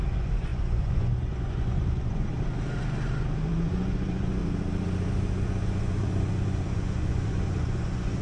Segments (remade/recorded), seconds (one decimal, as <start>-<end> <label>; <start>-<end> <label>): 0.0-2.3 remade; 2.3-3.5 recorded; 3.5-4.4 remade; 4.4-5.1 recorded; 5.1-8.2 remade

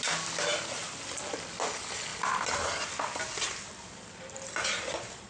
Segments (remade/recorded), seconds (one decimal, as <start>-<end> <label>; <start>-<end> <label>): 0.0-5.3 recorded

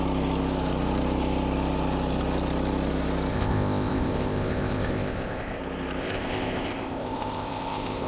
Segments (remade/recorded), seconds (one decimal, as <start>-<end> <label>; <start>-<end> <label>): 0.0-3.3 recorded; 3.3-5.6 remade; 5.6-6.0 recorded; 6.0-8.1 remade

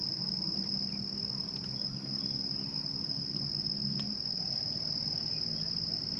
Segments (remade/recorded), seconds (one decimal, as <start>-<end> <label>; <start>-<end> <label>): 0.0-6.2 recorded